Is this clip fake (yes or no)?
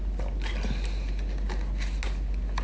no